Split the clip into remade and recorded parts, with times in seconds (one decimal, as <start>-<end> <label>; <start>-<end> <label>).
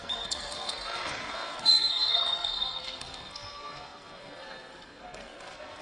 0.0-5.8 remade